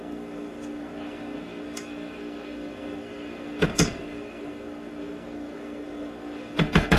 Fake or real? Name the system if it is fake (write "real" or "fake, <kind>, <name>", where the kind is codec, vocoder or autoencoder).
fake, codec, SNAC